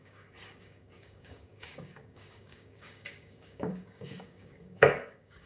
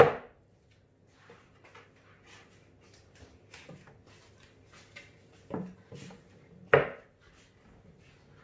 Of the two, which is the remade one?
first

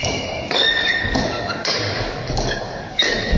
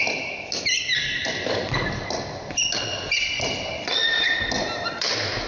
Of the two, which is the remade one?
first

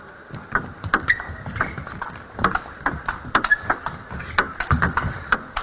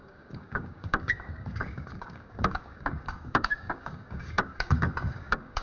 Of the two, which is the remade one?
second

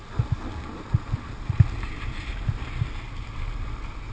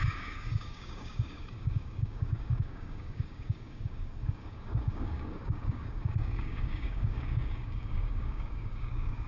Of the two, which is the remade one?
second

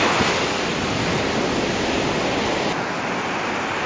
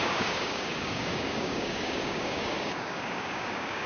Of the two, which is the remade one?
second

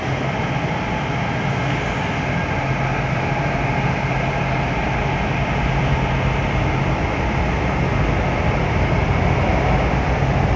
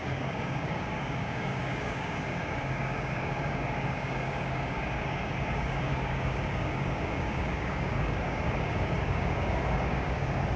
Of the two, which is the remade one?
second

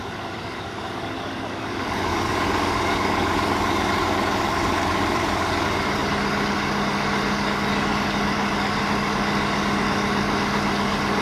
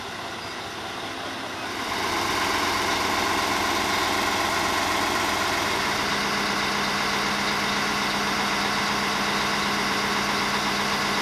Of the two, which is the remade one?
first